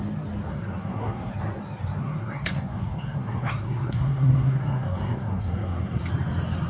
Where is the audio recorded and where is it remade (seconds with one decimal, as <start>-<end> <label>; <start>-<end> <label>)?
0.0-0.5 recorded; 0.5-1.3 remade; 1.3-2.0 recorded; 2.0-6.0 remade; 6.0-6.7 recorded